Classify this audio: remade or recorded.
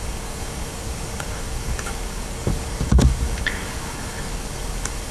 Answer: remade